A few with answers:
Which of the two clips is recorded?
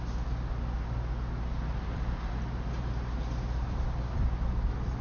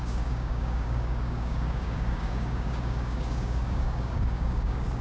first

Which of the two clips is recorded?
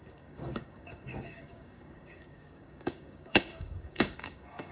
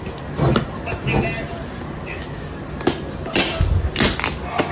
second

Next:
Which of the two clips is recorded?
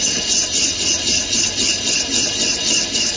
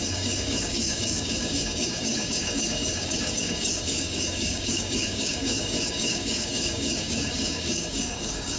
first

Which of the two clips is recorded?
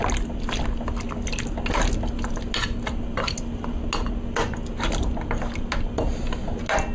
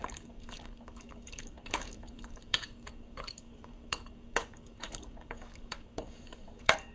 first